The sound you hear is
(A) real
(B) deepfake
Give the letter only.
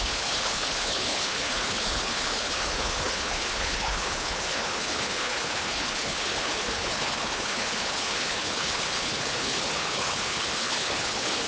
B